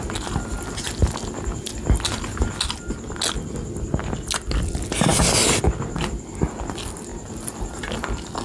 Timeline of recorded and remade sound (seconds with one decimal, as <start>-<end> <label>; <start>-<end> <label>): 0.0-8.4 recorded